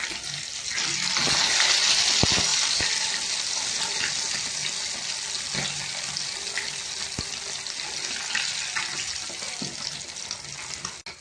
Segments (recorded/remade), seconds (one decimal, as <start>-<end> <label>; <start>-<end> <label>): 0.0-11.2 recorded